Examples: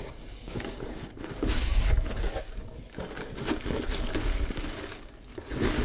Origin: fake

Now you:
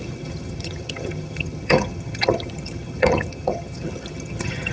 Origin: fake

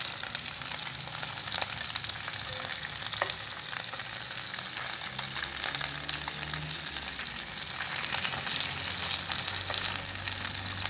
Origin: real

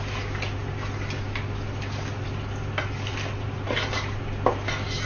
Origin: real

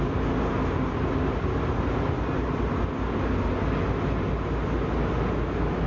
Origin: real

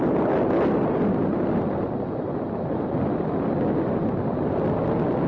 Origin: real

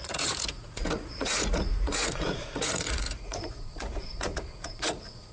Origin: fake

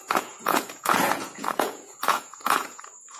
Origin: fake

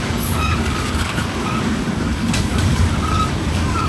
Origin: fake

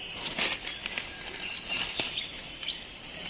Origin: real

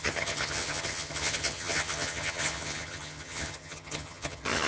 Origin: fake